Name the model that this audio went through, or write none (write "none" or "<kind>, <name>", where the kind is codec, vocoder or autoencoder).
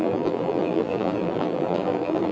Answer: vocoder, BigVGAN v2